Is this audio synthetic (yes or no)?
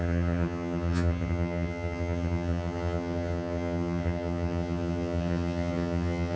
yes